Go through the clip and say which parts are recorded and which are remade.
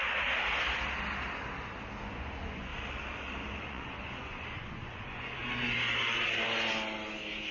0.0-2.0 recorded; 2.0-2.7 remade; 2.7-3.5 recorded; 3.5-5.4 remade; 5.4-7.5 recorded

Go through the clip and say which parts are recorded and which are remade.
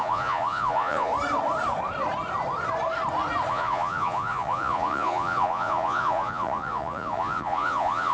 0.0-1.1 remade; 1.1-3.5 recorded; 3.5-8.1 remade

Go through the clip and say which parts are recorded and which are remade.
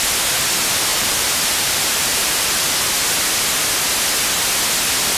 0.0-0.9 recorded; 0.9-2.7 remade; 2.7-5.2 recorded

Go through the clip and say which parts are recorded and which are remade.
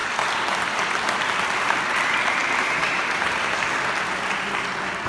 0.0-2.4 recorded; 2.4-3.0 remade; 3.0-5.1 recorded